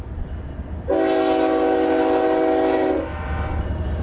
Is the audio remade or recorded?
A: recorded